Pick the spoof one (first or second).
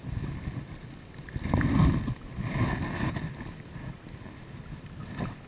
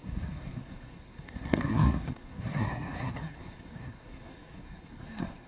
second